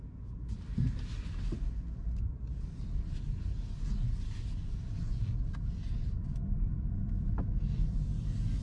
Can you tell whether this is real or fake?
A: real